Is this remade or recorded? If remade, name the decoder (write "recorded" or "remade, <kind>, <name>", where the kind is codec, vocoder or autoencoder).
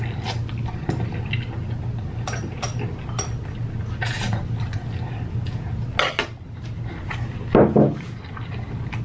recorded